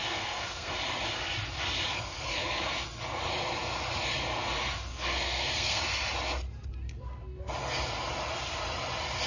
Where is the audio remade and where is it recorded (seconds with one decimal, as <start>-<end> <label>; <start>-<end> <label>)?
0.0-0.7 remade; 0.7-1.9 recorded; 1.9-2.6 remade; 2.6-4.9 recorded; 4.9-5.8 remade; 5.8-9.3 recorded